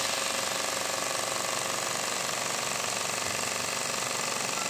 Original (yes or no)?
yes